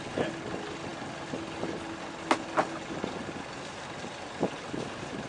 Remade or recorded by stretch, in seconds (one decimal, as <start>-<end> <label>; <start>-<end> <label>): 0.0-5.3 recorded

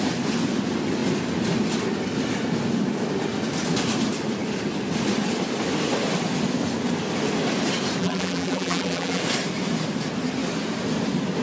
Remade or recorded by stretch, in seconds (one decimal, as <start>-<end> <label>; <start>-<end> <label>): 0.0-8.0 recorded; 8.0-9.2 remade; 9.2-11.4 recorded

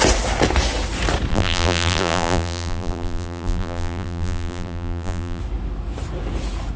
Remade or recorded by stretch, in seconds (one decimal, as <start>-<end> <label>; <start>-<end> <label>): 0.0-1.3 recorded; 1.3-5.4 remade; 5.4-6.8 recorded

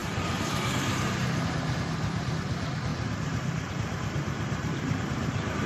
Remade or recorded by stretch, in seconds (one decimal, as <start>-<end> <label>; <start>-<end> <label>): 0.0-2.9 remade; 2.9-3.7 recorded; 3.7-5.7 remade

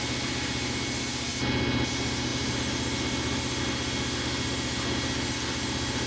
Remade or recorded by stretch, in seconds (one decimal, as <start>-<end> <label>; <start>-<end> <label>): 0.0-6.1 recorded

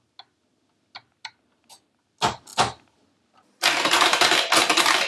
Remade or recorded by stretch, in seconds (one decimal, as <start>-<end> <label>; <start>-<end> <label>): 0.0-5.1 recorded

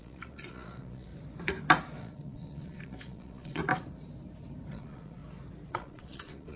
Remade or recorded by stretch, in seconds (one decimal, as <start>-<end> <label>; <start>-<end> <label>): 0.0-1.1 remade; 1.1-2.0 recorded; 2.0-3.6 remade; 3.6-4.7 recorded; 4.7-5.2 remade; 5.2-5.7 recorded; 5.7-6.6 remade

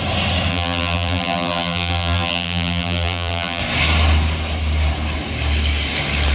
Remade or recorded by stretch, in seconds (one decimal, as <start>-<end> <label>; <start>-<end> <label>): 0.0-0.5 recorded; 0.5-3.6 remade; 3.6-6.3 recorded